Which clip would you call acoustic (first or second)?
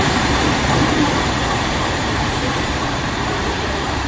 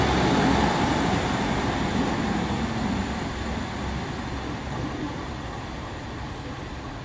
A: second